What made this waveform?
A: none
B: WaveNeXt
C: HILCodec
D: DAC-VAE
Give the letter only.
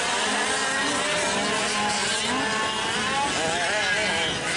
A